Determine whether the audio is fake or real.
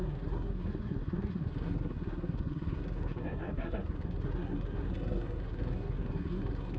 fake